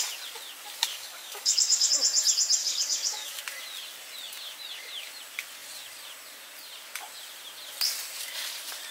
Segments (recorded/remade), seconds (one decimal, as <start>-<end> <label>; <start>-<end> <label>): 0.0-0.9 recorded; 0.9-1.9 remade; 1.9-2.6 recorded; 2.6-3.4 remade; 3.4-8.9 recorded